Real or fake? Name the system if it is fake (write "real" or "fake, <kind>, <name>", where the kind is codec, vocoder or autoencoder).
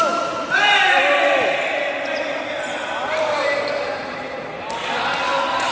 fake, vocoder, BigVGAN v2